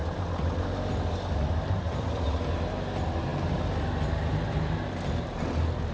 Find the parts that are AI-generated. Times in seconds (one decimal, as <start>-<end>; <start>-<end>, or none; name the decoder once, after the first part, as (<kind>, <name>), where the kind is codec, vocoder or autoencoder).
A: none